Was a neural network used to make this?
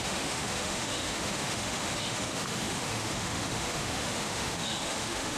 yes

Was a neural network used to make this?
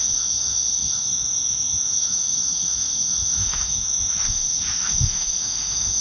yes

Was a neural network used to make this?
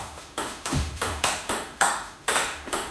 yes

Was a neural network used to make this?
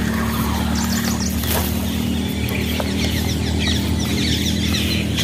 no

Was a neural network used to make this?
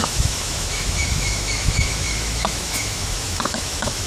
yes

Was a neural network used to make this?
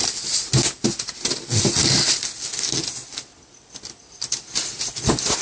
no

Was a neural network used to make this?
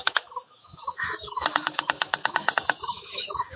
yes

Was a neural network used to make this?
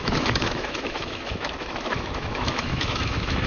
yes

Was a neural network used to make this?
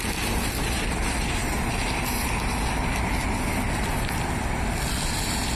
no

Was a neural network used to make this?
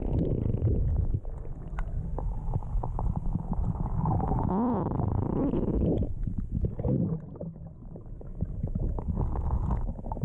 no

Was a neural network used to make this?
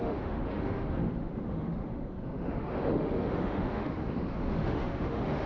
yes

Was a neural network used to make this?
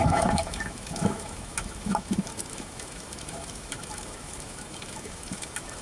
yes